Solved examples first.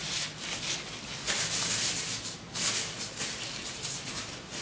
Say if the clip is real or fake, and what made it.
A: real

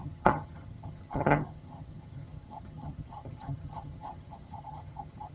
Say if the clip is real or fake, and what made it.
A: fake, vocoder, HiFi-GAN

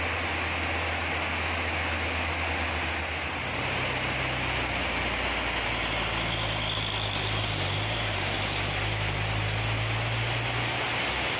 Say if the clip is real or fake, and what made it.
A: real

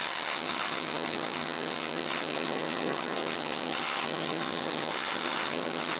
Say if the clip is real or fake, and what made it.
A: fake, vocoder, HiFi-GAN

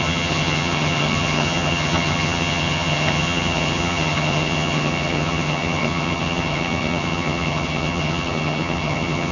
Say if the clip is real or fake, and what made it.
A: fake, vocoder, HiFi-GAN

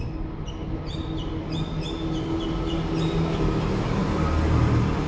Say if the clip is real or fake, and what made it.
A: real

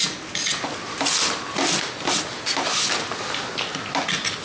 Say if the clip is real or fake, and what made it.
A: real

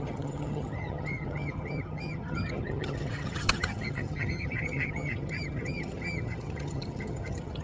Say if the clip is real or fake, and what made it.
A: fake, vocoder, HiFi-GAN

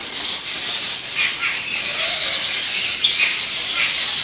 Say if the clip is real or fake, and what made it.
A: real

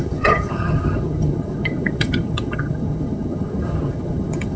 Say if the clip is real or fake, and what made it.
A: fake, vocoder, HiFi-GAN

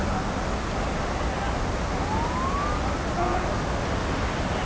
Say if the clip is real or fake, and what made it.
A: real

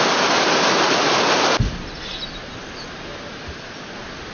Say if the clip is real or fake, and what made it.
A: real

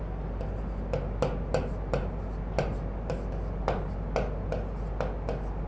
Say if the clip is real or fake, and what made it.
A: real